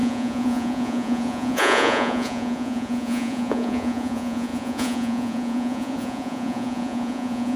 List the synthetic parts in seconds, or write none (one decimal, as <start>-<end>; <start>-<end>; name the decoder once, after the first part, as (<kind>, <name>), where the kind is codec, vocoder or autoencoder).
0.0-7.6 (vocoder, Vocos)